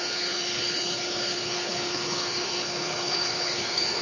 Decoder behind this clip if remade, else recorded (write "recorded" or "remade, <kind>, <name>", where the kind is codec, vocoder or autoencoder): remade, codec, HILCodec